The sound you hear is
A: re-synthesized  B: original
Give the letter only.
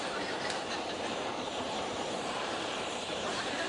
A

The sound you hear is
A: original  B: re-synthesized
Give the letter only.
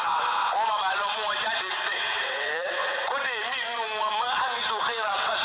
B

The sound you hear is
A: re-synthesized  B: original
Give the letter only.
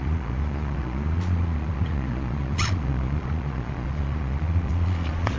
A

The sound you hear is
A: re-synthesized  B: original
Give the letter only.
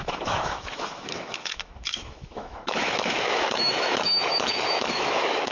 A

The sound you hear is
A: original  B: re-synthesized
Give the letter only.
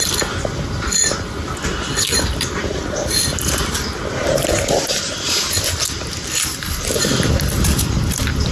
A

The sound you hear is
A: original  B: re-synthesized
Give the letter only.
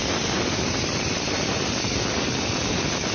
B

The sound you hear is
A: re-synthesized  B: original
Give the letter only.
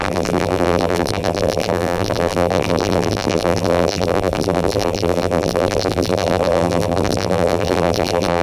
A